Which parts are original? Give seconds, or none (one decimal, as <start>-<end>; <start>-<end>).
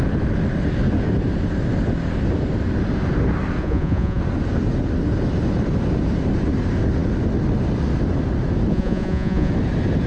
0.0-3.6; 4.2-8.7; 9.5-10.1